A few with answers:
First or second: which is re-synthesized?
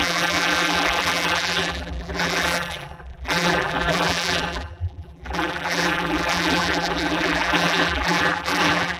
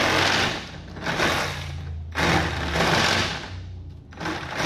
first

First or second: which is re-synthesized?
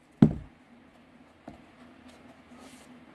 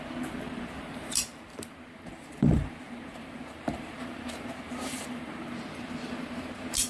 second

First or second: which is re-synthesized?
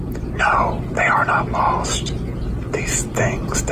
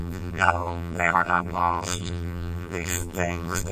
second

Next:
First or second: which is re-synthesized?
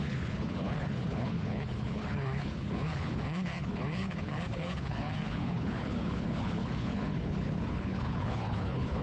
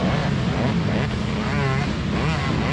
first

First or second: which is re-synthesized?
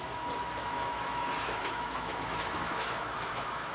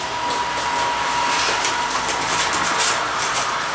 first